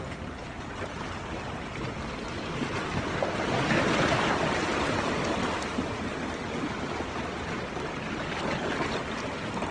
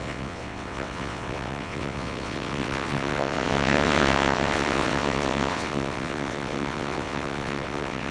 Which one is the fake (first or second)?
second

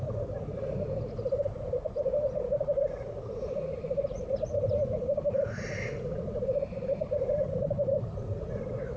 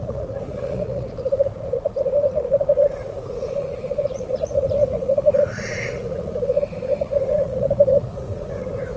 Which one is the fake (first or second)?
second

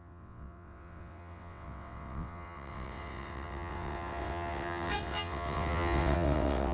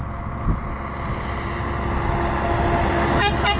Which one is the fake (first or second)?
first